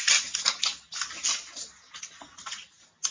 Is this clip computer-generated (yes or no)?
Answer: no